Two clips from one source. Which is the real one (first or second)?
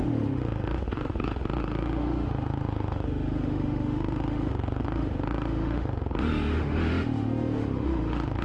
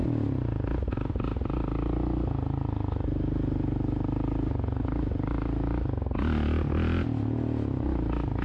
second